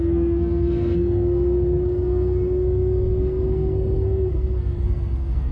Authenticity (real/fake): fake